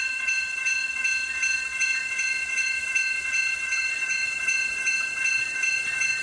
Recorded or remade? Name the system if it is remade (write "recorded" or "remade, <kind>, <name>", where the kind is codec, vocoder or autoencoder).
remade, vocoder, WaveNeXt